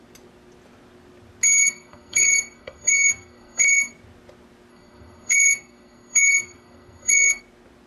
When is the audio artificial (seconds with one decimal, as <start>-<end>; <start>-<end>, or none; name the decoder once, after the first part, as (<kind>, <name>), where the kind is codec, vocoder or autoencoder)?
1.6-3.9 (codec, SNAC); 4.7-7.4